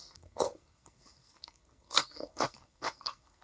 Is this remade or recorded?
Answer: remade